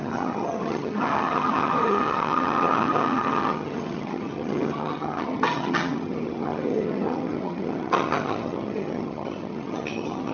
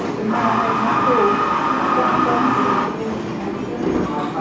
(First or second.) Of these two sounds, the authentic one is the second